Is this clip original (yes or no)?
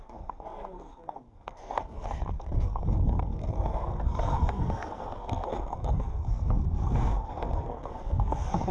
no